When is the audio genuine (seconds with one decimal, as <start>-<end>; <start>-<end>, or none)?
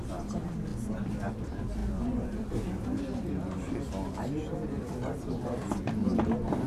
0.0-6.7